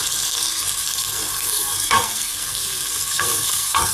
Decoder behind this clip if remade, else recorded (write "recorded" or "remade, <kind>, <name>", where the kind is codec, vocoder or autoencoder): remade, codec, SNAC